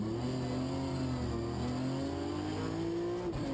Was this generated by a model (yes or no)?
no